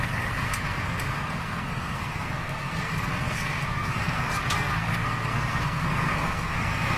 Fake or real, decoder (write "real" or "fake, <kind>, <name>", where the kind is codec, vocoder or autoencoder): fake, codec, SNAC